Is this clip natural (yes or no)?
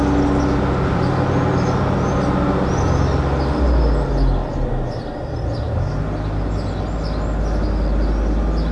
yes